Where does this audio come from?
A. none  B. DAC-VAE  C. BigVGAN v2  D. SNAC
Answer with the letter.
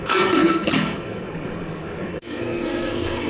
D